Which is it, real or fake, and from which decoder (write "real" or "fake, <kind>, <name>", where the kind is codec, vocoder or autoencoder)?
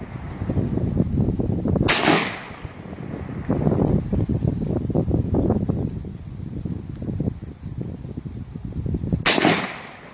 real